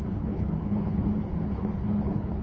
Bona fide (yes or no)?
no